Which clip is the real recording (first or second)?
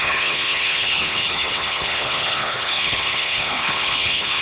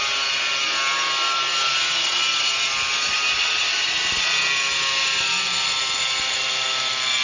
second